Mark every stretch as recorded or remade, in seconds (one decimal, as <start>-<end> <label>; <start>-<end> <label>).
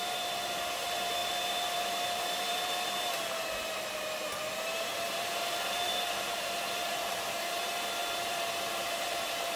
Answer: 0.0-9.6 remade